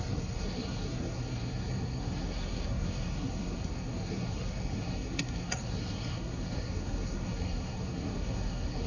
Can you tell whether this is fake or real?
fake